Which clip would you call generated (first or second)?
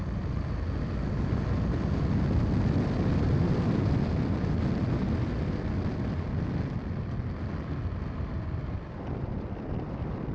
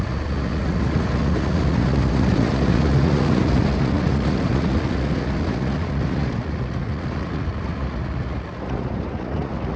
second